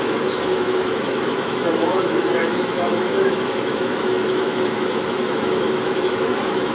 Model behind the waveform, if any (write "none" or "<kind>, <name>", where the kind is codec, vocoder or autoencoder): autoencoder, DAC-VAE